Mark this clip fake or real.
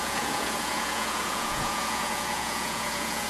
fake